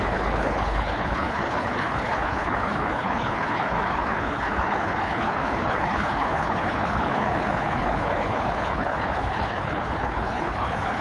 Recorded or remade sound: remade